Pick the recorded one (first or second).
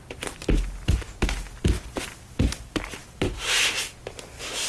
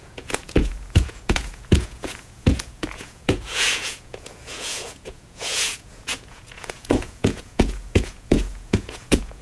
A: first